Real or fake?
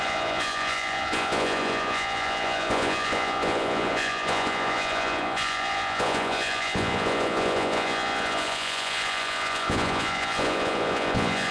fake